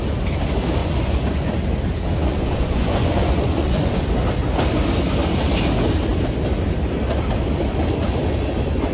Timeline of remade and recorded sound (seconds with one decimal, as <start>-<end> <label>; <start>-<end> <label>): 0.0-0.8 recorded; 0.8-1.6 remade; 1.6-2.3 recorded; 2.3-4.0 remade; 4.0-8.9 recorded